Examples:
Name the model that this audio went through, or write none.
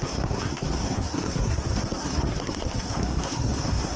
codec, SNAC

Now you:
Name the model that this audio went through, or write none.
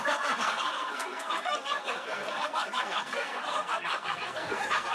codec, SNAC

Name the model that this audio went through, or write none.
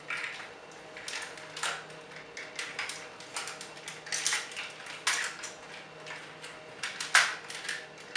none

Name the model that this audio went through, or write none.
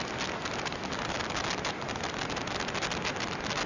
none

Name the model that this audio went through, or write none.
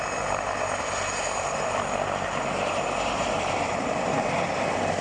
none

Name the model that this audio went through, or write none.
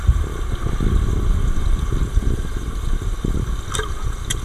none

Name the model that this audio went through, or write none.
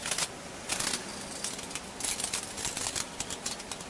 none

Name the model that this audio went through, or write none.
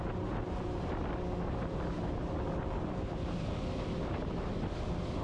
none